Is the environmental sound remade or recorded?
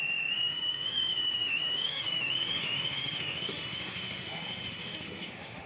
remade